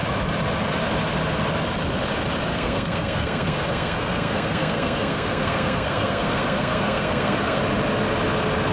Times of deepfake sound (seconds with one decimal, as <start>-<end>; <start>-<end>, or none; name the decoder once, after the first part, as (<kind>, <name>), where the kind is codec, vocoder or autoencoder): 2.5-7.6 (codec, SNAC)

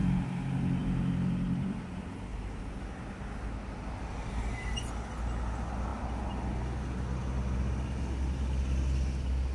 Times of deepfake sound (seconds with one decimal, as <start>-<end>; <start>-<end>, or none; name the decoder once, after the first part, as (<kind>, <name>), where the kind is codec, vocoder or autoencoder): none

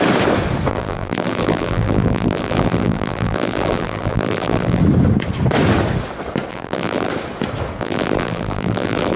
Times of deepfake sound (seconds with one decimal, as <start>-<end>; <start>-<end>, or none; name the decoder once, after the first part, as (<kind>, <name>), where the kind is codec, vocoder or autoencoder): 0.7-4.8 (vocoder, BigVGAN v2); 6.5-7.1; 7.8-9.2

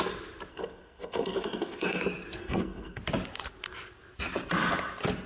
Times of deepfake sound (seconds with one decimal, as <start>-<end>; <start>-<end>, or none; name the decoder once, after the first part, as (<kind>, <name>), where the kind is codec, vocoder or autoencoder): 0.5-2.0 (codec, SNAC); 2.4-3.0

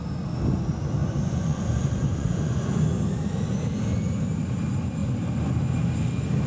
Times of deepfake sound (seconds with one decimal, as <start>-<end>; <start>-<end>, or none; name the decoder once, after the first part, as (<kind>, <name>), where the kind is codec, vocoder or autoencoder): 1.0-2.7 (vocoder, Vocos)

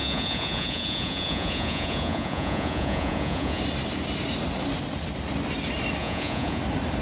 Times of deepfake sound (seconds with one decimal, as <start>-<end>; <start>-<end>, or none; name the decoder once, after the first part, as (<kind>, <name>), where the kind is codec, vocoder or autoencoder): 0.0-3.6 (vocoder, Vocos); 6.0-6.6